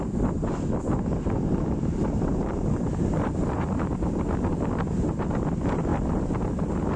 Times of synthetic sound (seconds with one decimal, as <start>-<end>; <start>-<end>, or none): 2.0-4.5